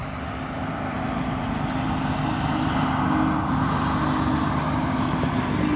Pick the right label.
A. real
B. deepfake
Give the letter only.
A